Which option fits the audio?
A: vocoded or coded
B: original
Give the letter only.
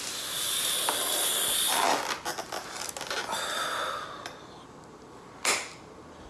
B